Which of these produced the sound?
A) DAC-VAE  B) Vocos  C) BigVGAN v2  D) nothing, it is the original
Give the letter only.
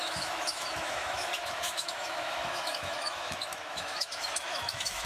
A